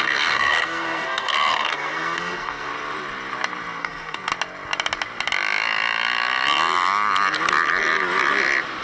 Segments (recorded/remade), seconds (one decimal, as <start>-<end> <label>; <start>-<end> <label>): 0.0-2.7 remade; 2.7-3.8 recorded; 3.8-4.3 remade; 4.3-8.8 recorded